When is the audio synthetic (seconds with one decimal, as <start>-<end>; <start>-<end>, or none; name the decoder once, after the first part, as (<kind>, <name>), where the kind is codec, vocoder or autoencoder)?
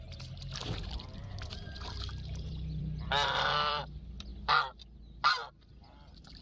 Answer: 1.2-3.8 (vocoder, BigVGAN v2)